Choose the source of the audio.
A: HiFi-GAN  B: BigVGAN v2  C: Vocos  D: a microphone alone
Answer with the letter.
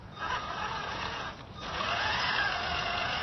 C